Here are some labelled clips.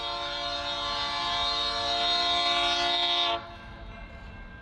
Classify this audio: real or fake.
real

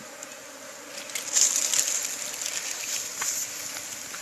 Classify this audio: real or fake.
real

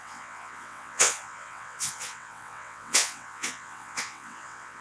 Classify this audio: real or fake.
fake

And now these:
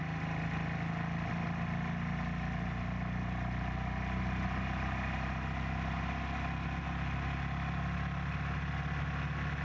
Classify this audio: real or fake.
real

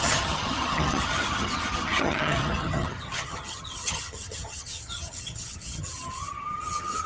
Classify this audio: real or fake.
fake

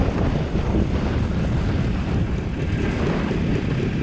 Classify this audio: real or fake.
real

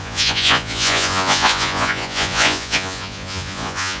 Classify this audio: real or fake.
fake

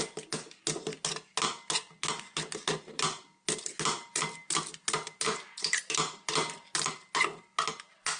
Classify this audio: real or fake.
real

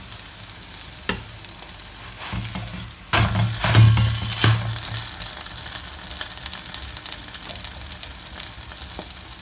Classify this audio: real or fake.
real